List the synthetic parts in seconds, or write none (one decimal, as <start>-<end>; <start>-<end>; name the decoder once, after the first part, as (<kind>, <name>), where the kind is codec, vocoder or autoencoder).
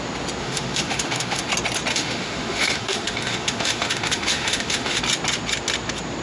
0.4-1.5 (autoencoder, DAC-VAE); 1.9-5.0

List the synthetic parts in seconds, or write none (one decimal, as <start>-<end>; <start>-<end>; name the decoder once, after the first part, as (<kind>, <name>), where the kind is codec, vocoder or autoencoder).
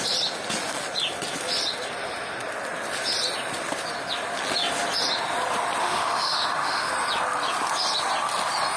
5.8-6.9 (autoencoder, DAC-VAE)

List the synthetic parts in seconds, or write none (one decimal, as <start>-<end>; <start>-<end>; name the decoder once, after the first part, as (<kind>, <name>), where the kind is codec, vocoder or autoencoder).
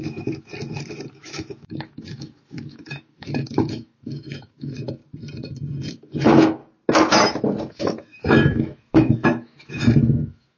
0.0-0.5 (autoencoder, DAC-VAE); 1.1-5.0; 5.9-6.6; 7.7-10.6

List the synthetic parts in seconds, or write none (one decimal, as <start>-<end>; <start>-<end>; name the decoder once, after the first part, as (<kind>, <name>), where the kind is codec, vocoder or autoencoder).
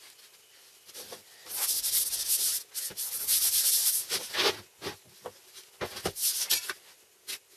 none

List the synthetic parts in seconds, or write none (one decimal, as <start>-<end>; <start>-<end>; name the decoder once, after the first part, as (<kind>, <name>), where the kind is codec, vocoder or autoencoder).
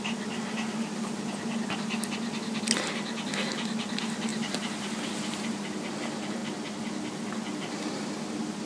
none